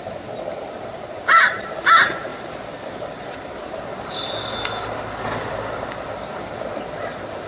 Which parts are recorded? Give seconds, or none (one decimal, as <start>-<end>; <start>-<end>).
0.0-7.5